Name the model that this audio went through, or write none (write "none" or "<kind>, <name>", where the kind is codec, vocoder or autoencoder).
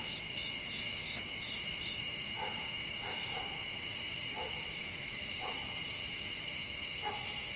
autoencoder, DAC-VAE